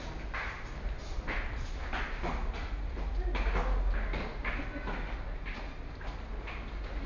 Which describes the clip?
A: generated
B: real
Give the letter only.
B